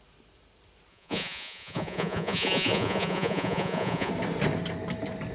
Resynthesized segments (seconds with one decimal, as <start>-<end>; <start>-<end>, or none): 0.9-4.1